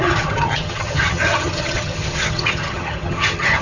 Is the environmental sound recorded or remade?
remade